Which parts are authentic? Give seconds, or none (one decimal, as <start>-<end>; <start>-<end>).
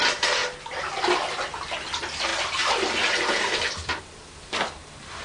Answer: 0.0-5.2